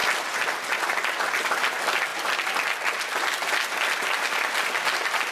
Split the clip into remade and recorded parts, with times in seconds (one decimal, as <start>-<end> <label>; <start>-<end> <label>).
0.0-5.3 recorded